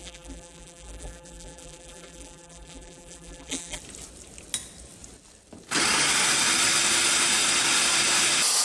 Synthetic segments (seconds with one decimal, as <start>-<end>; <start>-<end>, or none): 0.0-3.8